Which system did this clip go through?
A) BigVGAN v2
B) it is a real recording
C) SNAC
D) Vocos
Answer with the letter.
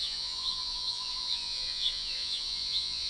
D